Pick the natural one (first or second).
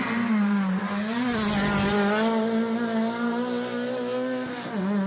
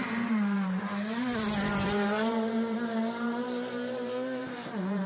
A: first